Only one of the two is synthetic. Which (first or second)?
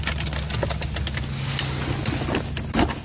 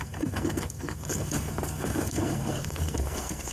second